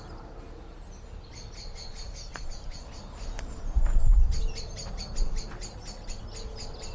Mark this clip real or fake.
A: real